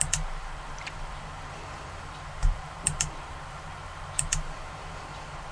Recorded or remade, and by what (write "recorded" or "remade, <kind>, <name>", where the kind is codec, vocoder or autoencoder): remade, vocoder, BigVGAN v2